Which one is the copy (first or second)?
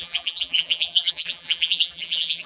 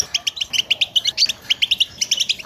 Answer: first